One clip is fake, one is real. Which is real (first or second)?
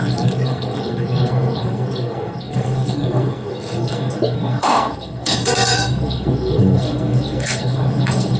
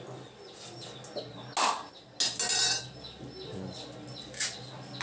second